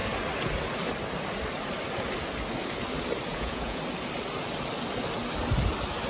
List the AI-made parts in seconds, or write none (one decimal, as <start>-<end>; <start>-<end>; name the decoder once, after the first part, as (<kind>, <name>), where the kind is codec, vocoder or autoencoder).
3.3-3.8 (vocoder, Vocos)